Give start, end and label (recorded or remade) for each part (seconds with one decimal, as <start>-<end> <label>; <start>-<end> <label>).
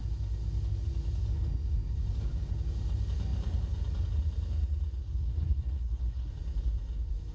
0.0-5.0 recorded; 5.0-6.3 remade; 6.3-7.3 recorded